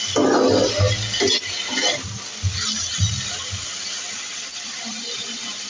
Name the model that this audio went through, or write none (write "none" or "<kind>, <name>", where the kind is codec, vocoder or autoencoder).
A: none